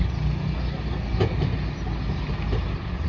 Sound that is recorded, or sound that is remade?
recorded